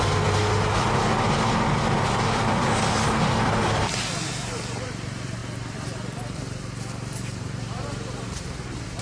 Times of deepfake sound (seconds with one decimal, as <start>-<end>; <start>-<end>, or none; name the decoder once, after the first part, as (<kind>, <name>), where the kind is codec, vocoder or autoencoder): 0.0-9.0 (vocoder, BigVGAN v2)